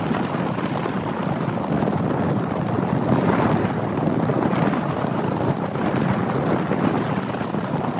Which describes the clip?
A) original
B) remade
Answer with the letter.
A